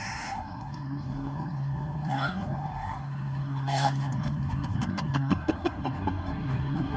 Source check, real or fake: fake